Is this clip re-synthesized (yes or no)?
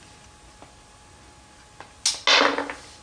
no